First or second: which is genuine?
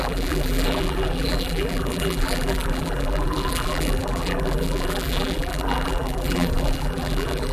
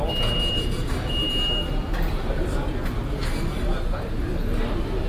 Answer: second